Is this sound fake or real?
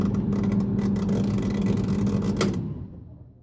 real